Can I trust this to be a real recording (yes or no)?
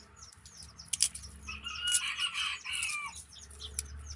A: yes